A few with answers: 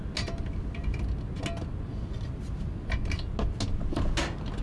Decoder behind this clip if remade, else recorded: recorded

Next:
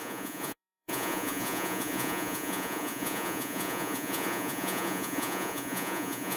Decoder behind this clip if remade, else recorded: remade, vocoder, Vocos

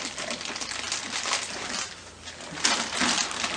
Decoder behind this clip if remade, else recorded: recorded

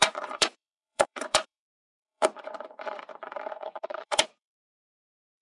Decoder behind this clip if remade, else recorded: remade, vocoder, Vocos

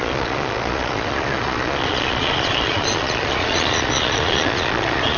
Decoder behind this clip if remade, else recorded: remade, vocoder, Vocos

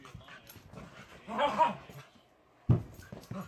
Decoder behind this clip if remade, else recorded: recorded